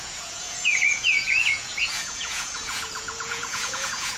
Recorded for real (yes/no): no